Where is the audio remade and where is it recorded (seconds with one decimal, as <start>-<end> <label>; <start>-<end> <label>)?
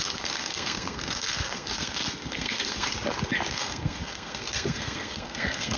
0.0-2.9 remade; 2.9-3.5 recorded; 3.5-5.8 remade